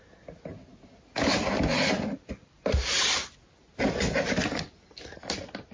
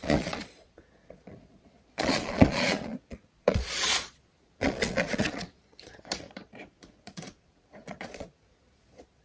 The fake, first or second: second